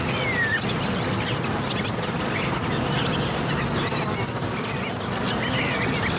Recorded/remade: recorded